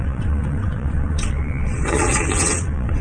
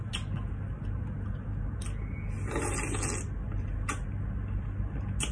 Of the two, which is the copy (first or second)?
first